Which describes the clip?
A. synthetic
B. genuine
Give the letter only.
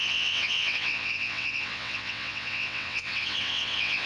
A